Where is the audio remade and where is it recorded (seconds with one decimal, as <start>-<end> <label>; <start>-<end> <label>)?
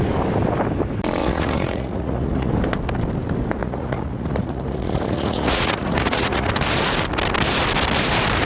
0.0-1.2 recorded; 1.2-2.5 remade; 2.5-3.6 recorded; 3.6-6.5 remade; 6.5-8.4 recorded